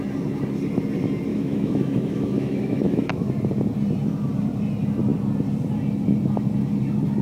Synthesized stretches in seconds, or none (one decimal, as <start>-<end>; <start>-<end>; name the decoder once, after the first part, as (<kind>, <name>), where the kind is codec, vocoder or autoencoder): 1.3-3.3 (autoencoder, DAC-VAE)